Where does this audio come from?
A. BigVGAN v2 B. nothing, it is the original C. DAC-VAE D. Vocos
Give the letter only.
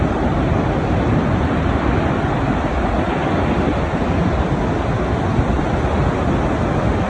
B